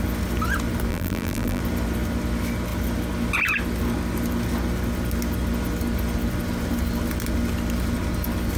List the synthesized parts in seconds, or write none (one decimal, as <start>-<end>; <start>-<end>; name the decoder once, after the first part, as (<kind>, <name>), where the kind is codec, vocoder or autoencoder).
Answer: 0.9-1.6 (vocoder, BigVGAN v2)